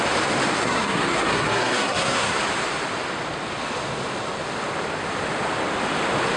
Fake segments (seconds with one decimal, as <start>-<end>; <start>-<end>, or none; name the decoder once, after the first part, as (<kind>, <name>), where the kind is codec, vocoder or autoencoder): 0.6-2.4 (codec, SNAC)